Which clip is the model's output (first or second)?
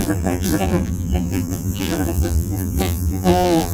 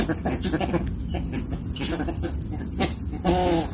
first